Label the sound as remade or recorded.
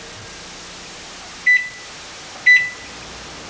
recorded